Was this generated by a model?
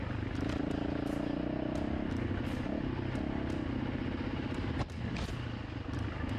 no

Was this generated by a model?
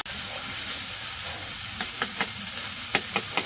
no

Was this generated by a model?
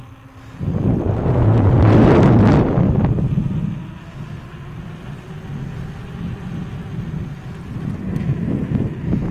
no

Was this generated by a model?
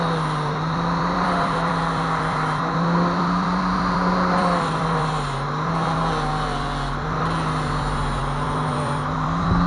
yes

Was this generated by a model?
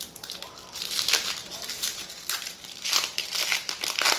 yes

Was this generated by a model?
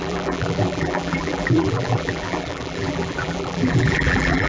yes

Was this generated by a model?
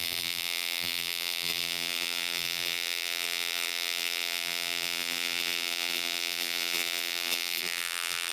yes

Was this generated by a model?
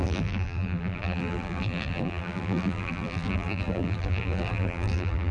yes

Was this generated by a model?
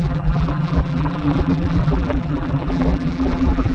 yes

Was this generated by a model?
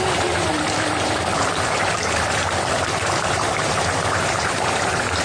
yes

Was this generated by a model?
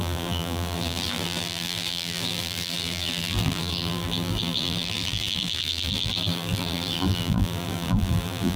yes